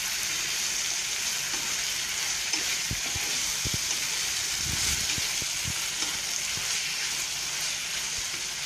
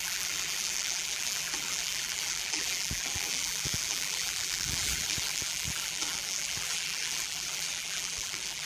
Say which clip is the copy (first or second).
second